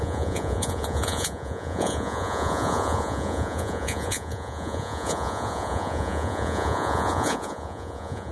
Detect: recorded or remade remade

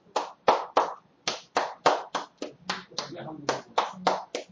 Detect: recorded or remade recorded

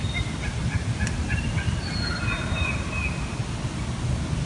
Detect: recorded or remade recorded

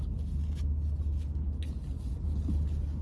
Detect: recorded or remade recorded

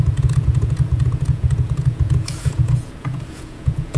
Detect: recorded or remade remade